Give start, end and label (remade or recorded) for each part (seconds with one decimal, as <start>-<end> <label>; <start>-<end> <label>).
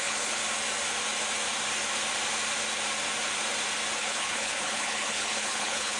0.0-0.4 remade; 0.4-4.0 recorded; 4.0-6.0 remade